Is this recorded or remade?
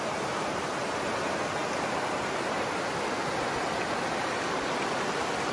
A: recorded